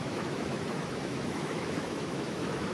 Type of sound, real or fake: fake